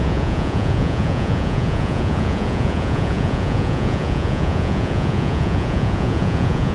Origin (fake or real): fake